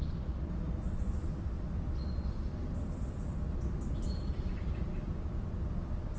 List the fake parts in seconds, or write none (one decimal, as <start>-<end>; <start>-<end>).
none